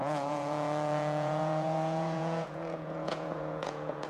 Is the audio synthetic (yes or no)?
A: yes